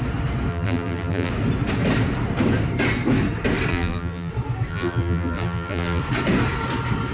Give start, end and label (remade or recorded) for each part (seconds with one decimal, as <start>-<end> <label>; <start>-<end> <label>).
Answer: 0.0-0.5 recorded; 0.5-1.3 remade; 1.3-3.7 recorded; 3.7-4.3 remade; 4.3-4.7 recorded; 4.7-6.0 remade; 6.0-7.1 recorded